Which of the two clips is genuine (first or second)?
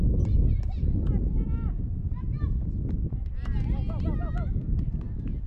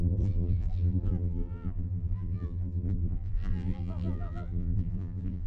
first